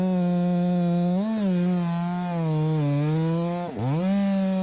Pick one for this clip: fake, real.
real